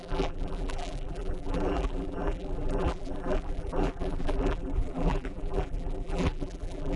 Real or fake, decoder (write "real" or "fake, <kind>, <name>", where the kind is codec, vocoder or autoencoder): fake, vocoder, BigVGAN v2